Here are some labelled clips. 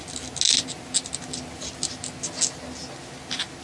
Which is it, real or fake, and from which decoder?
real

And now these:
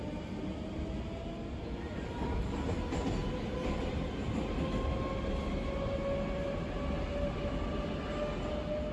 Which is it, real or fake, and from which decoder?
real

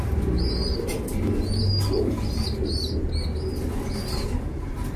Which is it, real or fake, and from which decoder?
real